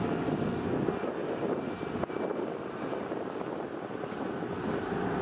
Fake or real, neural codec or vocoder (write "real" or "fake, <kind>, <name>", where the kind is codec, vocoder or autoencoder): real